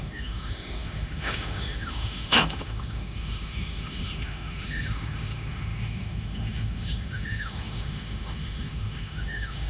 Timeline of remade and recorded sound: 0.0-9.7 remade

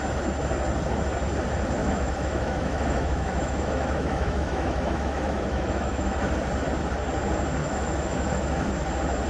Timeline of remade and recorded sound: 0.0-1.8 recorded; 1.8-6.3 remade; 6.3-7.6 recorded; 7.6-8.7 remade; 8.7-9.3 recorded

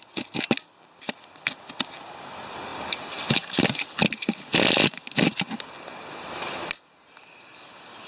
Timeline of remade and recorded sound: 0.0-8.1 recorded